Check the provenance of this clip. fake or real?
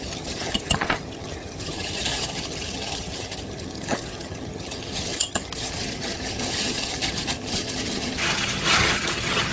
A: fake